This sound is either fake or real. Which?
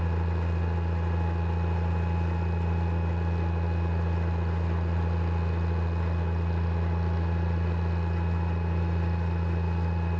real